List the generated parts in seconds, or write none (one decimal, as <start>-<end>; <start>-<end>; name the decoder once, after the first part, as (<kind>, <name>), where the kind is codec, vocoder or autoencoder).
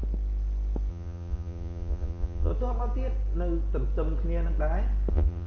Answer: 0.9-2.5 (vocoder, Vocos); 5.1-5.5